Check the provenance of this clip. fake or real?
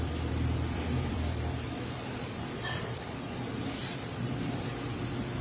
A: fake